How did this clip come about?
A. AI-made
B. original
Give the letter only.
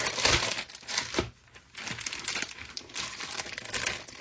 B